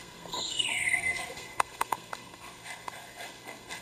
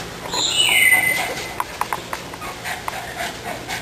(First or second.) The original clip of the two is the second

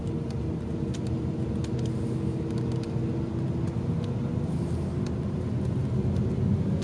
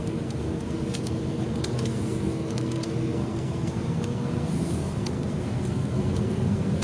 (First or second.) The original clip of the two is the first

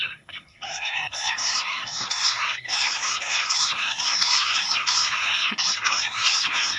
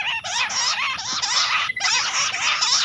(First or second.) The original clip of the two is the second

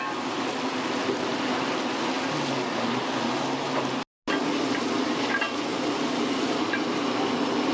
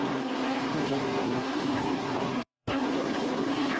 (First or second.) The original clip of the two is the first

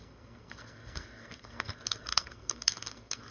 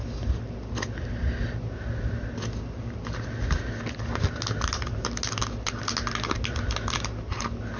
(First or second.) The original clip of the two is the second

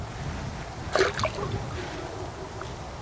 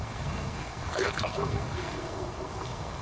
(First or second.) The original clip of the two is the first